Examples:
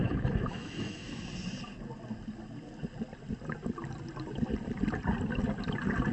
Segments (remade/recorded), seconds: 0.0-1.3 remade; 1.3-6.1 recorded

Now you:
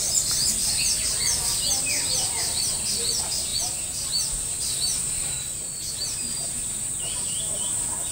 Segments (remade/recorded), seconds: 0.0-8.1 recorded

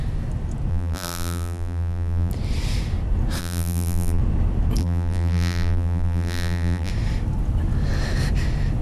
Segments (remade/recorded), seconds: 0.0-0.7 recorded; 0.7-2.3 remade; 2.3-3.4 recorded; 3.4-4.2 remade; 4.2-4.8 recorded; 4.8-6.9 remade; 6.9-8.8 recorded